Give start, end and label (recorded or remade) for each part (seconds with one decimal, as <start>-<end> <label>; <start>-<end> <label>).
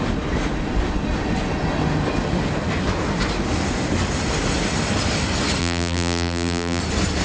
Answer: 0.0-5.6 recorded; 5.6-6.8 remade; 6.8-7.2 recorded